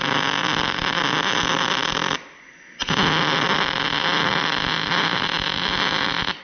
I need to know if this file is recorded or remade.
recorded